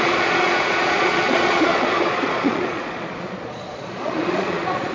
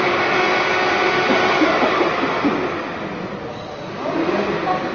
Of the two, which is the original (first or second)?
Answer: second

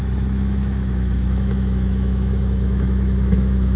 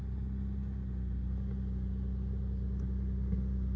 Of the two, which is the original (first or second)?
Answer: second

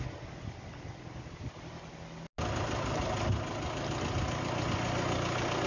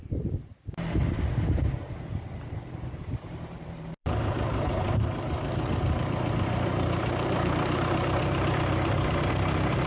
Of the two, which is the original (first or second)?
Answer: first